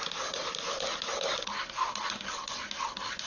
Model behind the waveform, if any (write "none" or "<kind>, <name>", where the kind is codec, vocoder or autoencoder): none